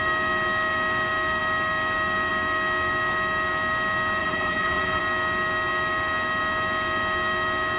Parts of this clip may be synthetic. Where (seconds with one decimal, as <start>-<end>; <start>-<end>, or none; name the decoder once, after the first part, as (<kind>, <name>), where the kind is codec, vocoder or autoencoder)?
4.2-5.0 (vocoder, BigVGAN v2)